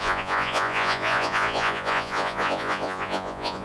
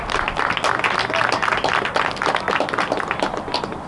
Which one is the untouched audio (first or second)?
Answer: second